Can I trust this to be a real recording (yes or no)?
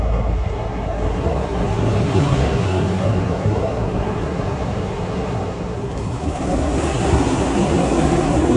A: no